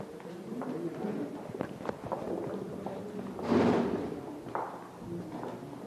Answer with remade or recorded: recorded